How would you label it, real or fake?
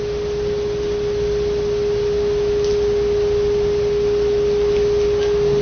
real